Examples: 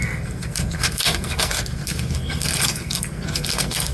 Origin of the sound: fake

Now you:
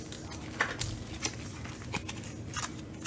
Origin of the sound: real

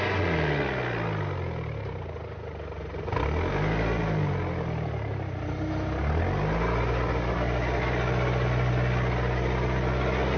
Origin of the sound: real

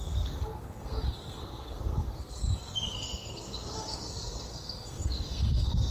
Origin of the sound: fake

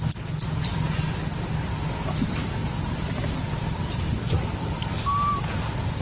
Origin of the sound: real